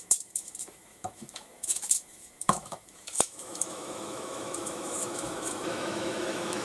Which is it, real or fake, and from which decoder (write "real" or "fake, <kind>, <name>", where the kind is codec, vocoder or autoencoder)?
fake, autoencoder, DAC-VAE